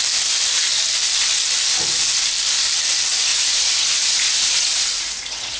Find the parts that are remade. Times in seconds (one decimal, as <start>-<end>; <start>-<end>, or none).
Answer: 3.3-5.6

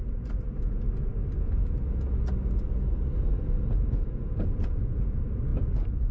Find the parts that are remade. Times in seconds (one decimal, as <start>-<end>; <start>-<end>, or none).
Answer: 0.6-1.1; 3.7-6.1

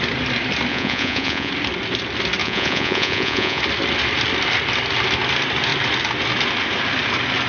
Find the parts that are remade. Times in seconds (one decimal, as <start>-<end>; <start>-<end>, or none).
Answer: 0.7-1.5; 2.4-3.6

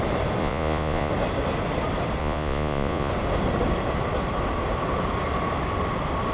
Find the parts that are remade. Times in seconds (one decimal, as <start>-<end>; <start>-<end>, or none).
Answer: 0.4-1.1; 2.2-3.1